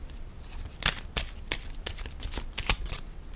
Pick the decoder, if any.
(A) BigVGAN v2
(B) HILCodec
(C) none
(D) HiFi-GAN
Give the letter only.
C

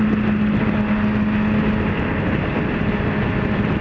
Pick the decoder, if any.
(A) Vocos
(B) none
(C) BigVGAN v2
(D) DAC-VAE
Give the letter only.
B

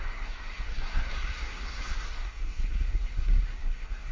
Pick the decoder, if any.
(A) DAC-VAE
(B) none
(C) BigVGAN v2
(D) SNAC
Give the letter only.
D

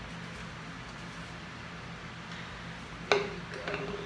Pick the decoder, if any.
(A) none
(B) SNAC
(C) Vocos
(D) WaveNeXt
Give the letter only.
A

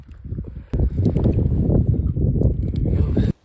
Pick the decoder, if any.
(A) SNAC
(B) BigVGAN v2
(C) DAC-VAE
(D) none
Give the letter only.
D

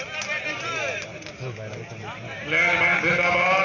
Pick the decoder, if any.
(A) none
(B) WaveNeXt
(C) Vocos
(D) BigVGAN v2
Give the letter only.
A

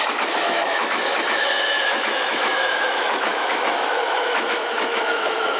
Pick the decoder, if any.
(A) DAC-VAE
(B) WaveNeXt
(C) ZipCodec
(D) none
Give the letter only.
A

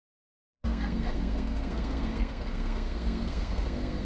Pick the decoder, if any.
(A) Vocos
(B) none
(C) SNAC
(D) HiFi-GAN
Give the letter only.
C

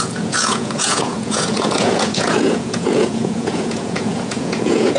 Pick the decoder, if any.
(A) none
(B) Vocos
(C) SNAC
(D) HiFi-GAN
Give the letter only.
B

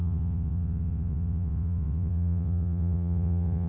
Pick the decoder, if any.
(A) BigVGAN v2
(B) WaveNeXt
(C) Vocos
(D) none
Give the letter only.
B